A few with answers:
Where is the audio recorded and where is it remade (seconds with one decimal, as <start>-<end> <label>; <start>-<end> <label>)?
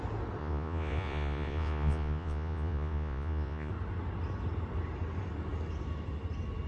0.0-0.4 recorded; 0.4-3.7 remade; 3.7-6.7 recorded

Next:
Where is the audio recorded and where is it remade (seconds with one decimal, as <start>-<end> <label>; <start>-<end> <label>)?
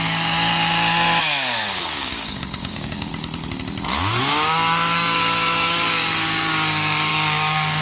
0.0-0.5 remade; 0.5-1.2 recorded; 1.2-3.1 remade; 3.1-4.2 recorded; 4.2-7.8 remade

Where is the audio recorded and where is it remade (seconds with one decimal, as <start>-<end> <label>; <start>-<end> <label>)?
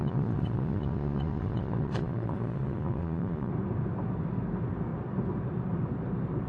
0.0-3.5 remade; 3.5-6.5 recorded